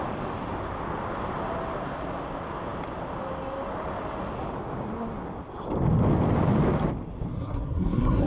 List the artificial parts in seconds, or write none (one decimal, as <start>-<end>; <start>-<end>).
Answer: 7.3-8.3